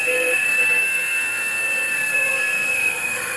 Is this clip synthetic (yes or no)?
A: yes